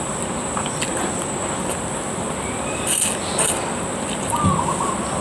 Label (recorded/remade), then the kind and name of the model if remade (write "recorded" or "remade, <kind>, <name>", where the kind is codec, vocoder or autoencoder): remade, vocoder, BigVGAN v2